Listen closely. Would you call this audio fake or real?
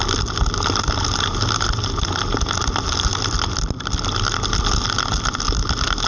real